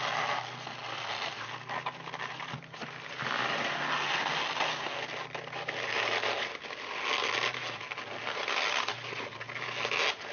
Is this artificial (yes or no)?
no